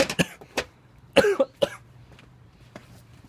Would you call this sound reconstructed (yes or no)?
yes